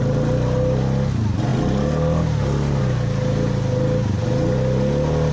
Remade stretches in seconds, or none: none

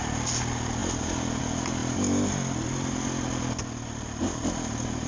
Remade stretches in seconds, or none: none